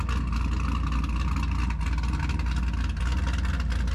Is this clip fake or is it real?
real